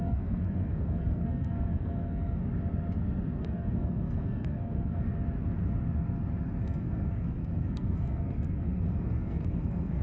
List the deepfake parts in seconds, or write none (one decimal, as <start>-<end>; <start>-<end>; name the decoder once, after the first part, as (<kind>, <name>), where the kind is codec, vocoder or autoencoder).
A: 0.0-2.4 (codec, SNAC); 3.4-5.1; 6.6-10.0